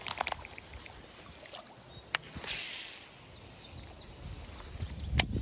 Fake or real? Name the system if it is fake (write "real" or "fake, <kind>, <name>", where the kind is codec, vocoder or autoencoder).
real